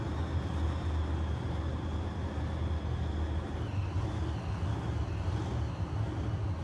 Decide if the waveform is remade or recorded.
recorded